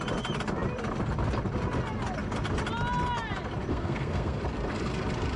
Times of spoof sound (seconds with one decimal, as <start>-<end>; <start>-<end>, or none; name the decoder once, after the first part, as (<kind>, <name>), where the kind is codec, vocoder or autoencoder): 3.7-4.4 (codec, SNAC)